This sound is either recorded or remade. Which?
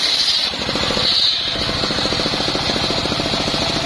recorded